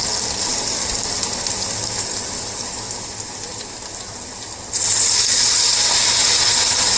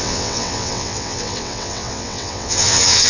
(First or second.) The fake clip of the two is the second